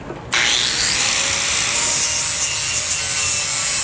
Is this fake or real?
real